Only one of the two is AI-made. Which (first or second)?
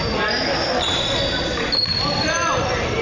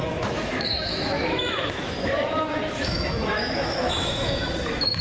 second